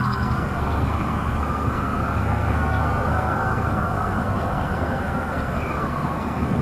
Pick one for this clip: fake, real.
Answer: fake